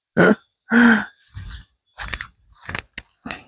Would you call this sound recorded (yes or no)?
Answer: yes